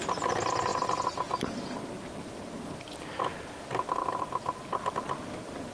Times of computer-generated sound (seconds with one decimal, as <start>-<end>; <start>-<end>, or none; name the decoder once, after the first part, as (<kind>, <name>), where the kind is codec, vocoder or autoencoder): 0.0-0.7 (vocoder, BigVGAN v2); 3.4-4.0; 4.9-5.7